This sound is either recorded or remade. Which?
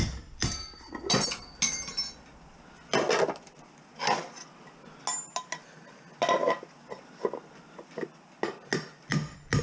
recorded